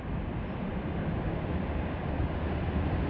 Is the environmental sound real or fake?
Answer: real